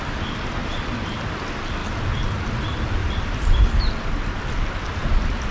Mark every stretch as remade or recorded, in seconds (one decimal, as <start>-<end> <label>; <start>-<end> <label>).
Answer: 0.0-0.6 recorded; 0.6-1.4 remade; 1.4-3.0 recorded; 3.0-4.1 remade; 4.1-5.5 recorded

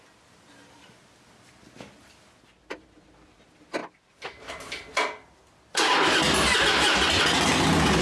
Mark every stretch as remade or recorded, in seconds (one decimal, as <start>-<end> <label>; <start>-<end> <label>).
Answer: 0.0-8.0 recorded